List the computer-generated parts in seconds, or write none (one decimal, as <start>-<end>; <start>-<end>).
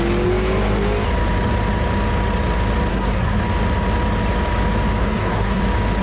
2.9-3.4; 5.0-5.6